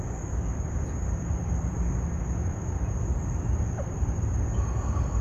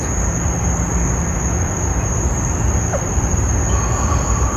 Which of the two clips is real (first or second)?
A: second